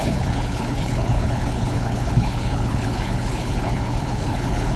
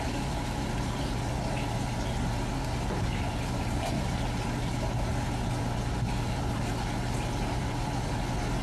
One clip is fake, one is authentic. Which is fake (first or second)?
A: first